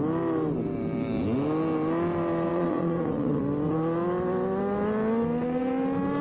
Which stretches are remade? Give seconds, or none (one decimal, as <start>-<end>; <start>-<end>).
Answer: 2.5-3.4